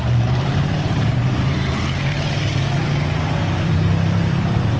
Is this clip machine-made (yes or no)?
yes